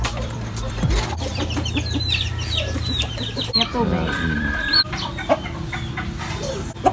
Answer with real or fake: fake